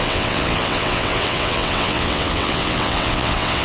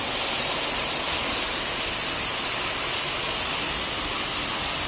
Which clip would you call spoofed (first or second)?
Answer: first